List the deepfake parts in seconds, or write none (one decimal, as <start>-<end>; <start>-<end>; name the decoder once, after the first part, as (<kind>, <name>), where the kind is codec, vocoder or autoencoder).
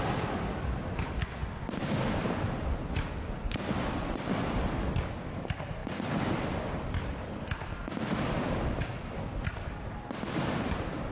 none